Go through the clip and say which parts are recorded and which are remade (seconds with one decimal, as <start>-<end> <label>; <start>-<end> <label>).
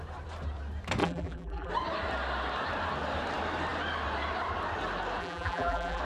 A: 0.0-1.0 recorded; 1.0-1.7 remade; 1.7-5.2 recorded; 5.2-6.0 remade